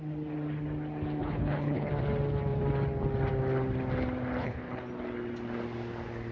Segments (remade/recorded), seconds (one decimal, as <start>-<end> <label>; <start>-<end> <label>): 0.0-1.2 recorded; 1.2-1.9 remade; 1.9-4.4 recorded; 4.4-4.9 remade; 4.9-6.3 recorded